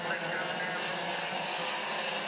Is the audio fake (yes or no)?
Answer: no